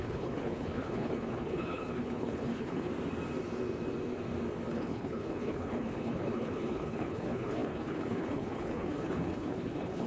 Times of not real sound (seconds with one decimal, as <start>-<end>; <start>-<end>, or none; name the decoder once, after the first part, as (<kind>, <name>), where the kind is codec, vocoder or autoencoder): 0.0-2.9 (codec, HILCodec); 4.7-10.1